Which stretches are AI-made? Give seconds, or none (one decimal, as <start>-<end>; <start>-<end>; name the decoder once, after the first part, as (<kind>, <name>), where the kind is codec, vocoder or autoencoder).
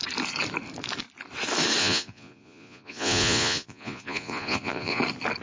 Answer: 1.8-5.0 (vocoder, Vocos)